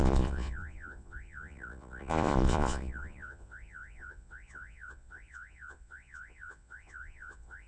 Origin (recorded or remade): remade